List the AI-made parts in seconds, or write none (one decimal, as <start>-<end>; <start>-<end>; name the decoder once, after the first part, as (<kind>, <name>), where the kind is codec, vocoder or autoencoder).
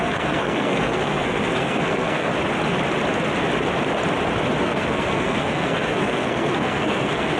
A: 0.0-2.3 (codec, SNAC); 4.6-7.4